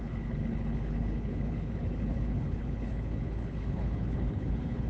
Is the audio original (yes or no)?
no